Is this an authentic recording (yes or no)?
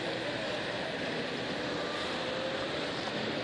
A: no